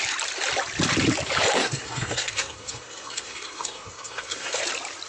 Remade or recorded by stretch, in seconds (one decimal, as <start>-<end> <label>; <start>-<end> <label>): 0.0-1.6 recorded; 1.6-4.6 remade; 4.6-5.1 recorded